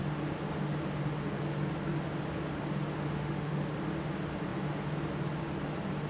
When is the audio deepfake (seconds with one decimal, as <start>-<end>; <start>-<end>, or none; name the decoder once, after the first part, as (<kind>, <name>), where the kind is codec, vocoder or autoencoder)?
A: 3.2-3.7 (autoencoder, DAC-VAE)